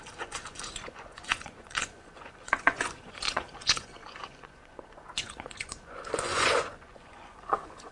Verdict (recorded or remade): remade